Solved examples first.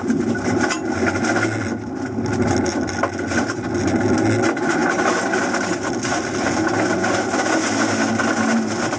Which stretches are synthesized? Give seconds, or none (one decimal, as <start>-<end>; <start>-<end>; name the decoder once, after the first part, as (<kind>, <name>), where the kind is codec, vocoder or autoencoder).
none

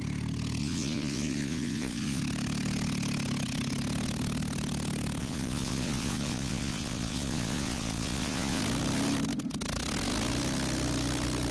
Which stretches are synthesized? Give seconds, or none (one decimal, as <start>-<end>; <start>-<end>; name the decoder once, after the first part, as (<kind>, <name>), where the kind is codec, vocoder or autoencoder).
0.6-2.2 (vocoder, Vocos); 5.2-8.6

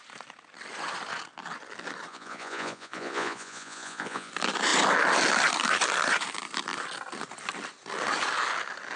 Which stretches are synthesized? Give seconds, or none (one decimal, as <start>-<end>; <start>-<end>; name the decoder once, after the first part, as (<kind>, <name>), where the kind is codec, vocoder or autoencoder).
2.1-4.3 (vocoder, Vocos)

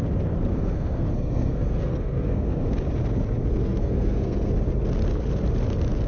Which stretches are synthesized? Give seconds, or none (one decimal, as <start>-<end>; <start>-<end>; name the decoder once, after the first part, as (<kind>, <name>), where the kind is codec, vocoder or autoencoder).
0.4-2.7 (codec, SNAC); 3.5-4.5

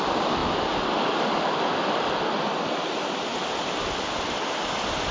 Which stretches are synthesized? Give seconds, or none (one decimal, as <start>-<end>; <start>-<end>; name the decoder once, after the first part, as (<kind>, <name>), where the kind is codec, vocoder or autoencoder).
none

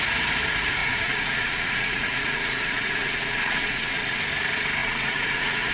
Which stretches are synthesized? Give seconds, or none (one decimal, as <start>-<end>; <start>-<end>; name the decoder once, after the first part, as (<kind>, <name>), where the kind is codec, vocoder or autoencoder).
0.8-4.2 (vocoder, Vocos); 4.8-5.7